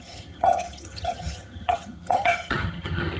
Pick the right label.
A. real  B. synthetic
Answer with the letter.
B